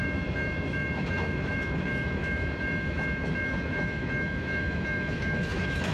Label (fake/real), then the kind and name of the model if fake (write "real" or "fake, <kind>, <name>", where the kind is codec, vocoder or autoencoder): fake, autoencoder, DAC-VAE